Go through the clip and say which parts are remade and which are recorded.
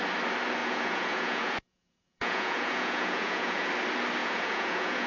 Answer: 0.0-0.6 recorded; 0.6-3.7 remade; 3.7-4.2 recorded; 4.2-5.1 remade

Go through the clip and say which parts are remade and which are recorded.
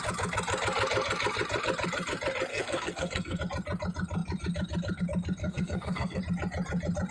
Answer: 0.0-2.5 recorded; 2.5-3.4 remade; 3.4-5.4 recorded; 5.4-6.2 remade; 6.2-7.1 recorded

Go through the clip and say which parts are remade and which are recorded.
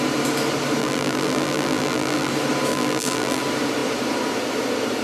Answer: 0.0-0.8 recorded; 0.8-2.3 remade; 2.3-2.7 recorded; 2.7-3.4 remade; 3.4-5.0 recorded